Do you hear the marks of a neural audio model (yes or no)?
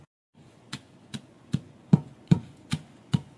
yes